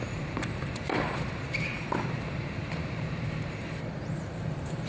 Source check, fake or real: fake